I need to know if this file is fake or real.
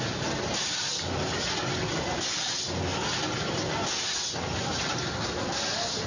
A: real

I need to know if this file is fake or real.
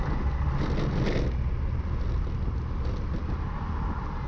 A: real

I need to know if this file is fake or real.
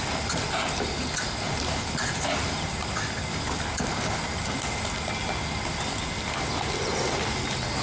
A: real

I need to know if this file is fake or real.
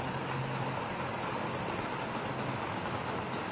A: real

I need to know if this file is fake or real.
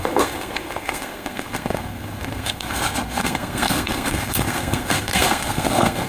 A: fake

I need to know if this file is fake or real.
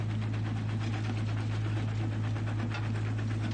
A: real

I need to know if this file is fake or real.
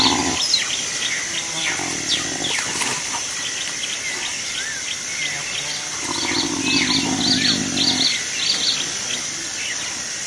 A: real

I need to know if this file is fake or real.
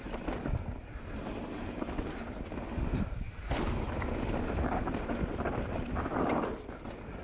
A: real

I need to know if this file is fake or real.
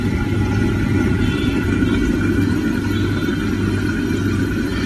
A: real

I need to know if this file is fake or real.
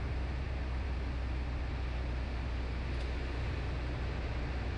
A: real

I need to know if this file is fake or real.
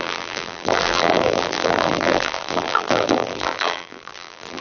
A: fake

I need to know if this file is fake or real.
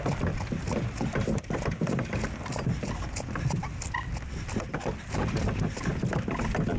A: real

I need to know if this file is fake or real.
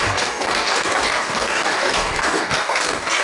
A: fake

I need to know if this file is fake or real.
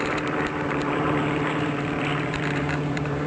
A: fake